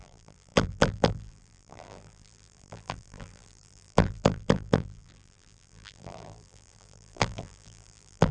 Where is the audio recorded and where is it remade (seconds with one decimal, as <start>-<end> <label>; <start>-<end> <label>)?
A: 0.0-8.3 remade